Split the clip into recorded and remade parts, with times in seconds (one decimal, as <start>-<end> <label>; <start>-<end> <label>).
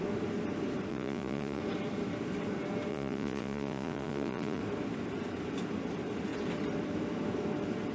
0.0-0.9 recorded; 0.9-1.6 remade; 1.6-2.9 recorded; 2.9-4.6 remade; 4.6-7.9 recorded